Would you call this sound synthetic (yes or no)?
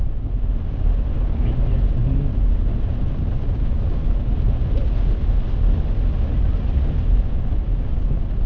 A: no